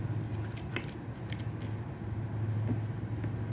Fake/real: real